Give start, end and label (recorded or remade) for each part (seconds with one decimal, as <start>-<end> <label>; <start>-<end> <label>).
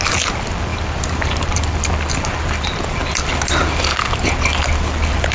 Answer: 0.0-0.7 recorded; 0.7-1.6 remade; 1.6-5.3 recorded